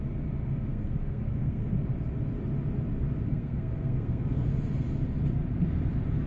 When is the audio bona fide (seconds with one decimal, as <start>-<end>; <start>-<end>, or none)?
0.0-0.7; 1.7-3.3; 4.5-6.3